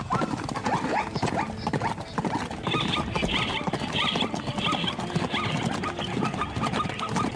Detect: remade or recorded recorded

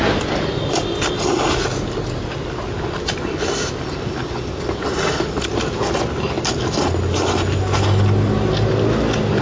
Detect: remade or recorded recorded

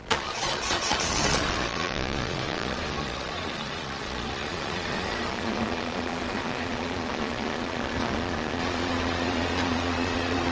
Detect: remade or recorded remade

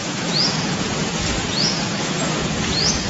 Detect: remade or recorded remade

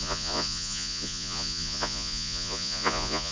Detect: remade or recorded remade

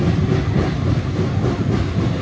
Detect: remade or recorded recorded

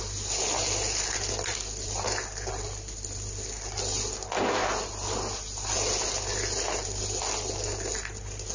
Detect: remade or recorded recorded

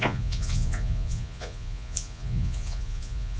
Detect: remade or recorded remade